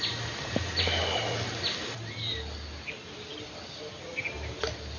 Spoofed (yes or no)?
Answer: no